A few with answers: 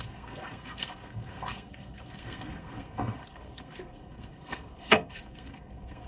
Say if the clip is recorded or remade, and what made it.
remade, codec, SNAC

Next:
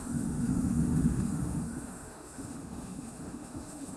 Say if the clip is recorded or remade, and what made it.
remade, autoencoder, DAC-VAE